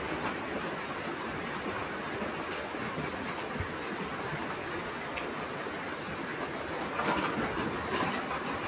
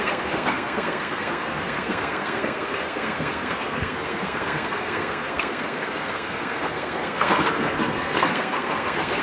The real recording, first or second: first